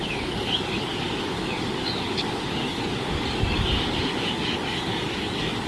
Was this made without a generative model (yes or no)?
no